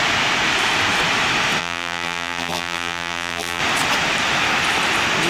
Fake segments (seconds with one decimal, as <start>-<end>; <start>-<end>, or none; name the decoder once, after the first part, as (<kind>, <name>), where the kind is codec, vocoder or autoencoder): 1.6-3.6 (vocoder, BigVGAN v2)

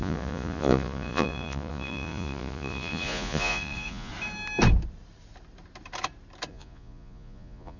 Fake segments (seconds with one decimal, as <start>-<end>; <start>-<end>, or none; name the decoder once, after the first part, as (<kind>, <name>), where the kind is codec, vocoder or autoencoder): 0.0-4.1 (vocoder, Vocos); 6.5-7.8

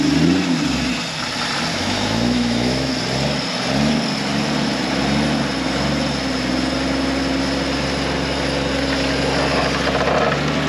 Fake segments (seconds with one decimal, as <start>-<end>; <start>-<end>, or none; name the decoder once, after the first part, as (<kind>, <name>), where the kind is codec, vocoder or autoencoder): 1.7-2.9 (autoencoder, DAC-VAE)

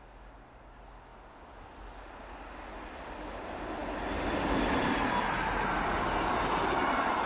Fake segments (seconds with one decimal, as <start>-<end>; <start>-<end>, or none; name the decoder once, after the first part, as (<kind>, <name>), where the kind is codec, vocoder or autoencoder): none